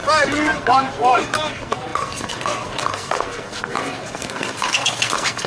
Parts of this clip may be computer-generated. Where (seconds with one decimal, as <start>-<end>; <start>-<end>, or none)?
0.0-5.5